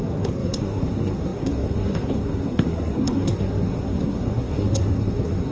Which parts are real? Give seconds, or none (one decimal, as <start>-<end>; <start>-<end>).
none